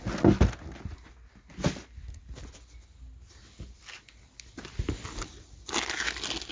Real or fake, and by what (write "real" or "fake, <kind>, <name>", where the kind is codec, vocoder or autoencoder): real